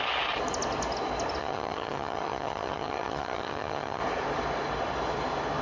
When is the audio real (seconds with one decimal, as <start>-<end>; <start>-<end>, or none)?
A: 0.0-1.4; 4.0-5.6